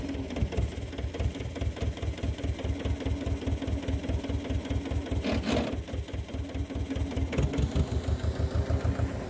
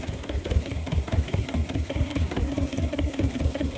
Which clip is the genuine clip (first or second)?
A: first